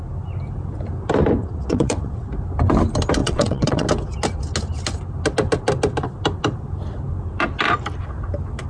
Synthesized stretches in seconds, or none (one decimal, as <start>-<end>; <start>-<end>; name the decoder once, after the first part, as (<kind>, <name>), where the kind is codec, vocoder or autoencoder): 1.4-2.3 (vocoder, WaveNeXt); 3.2-3.9